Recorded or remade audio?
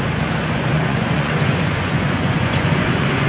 remade